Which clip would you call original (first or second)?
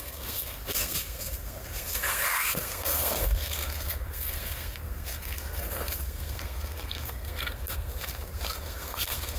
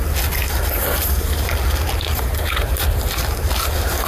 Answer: second